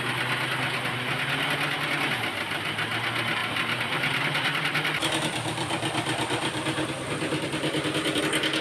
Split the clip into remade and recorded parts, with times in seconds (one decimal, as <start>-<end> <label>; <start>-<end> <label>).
0.0-3.4 recorded; 3.4-8.2 remade; 8.2-8.6 recorded